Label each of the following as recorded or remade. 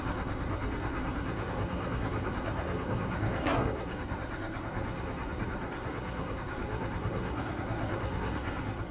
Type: remade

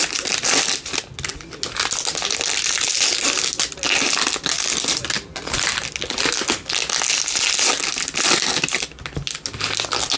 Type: recorded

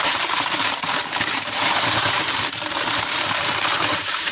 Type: remade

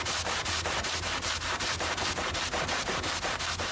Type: recorded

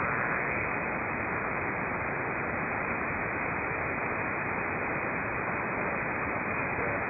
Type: recorded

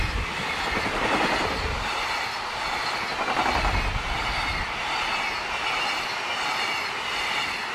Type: recorded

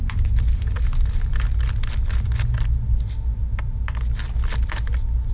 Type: recorded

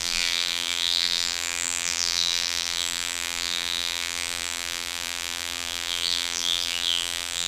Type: remade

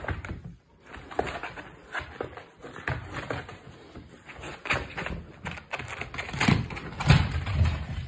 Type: recorded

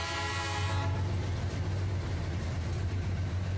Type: recorded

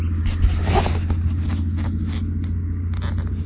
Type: recorded